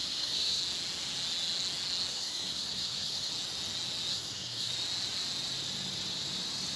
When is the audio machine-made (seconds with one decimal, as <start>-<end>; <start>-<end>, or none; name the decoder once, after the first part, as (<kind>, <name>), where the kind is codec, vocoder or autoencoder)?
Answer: 0.0-0.6 (codec, SNAC); 2.1-3.3; 4.1-4.7